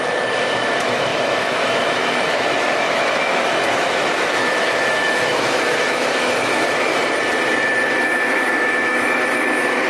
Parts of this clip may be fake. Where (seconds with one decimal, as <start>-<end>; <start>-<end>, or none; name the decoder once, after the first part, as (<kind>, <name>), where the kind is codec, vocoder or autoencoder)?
0.0-6.9 (autoencoder, DAC-VAE); 7.9-9.9